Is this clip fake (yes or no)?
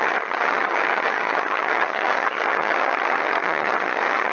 yes